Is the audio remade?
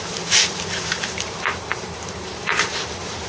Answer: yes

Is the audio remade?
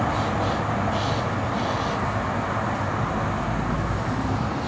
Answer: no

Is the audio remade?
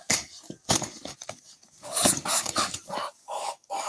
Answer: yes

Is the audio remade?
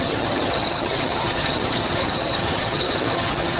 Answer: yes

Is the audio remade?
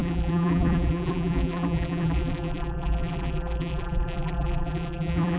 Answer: yes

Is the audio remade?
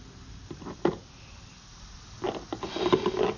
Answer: no